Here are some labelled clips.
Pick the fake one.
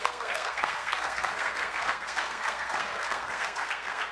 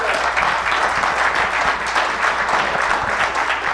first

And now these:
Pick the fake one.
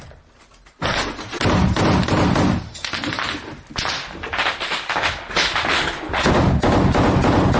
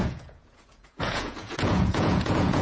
second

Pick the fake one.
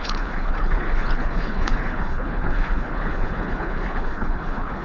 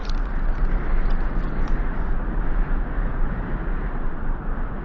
first